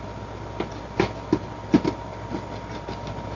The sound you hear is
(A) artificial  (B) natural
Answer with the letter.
B